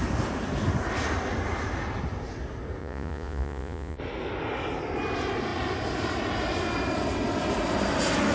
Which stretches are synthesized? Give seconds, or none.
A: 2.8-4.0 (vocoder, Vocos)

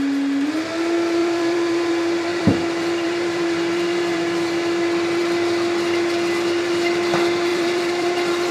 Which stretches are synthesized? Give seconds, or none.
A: 1.2-1.9 (vocoder, BigVGAN v2); 2.3-4.2; 7.5-8.5

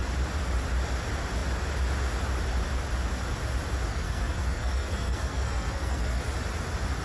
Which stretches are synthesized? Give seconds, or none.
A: 3.9-6.2 (codec, SNAC)

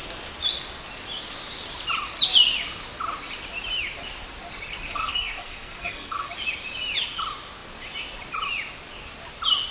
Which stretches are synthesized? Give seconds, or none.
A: 4.9-6.3 (codec, SNAC)

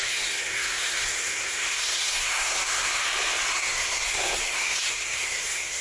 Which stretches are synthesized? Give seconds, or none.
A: 0.0-3.0 (codec, SNAC); 3.5-5.8

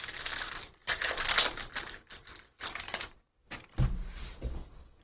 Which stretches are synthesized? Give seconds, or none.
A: none

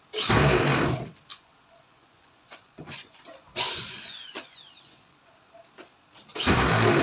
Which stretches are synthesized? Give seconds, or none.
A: 1.3-5.5 (vocoder, Vocos)